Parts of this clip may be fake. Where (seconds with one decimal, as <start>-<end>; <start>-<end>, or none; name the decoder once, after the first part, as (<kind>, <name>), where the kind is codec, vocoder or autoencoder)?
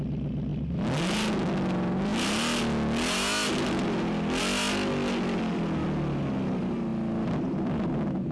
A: none